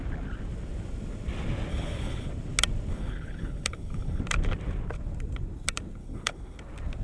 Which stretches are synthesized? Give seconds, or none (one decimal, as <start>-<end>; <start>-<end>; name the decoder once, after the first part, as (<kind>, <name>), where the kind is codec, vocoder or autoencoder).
1.7-2.3 (codec, HILCodec); 2.9-4.2; 6.0-6.6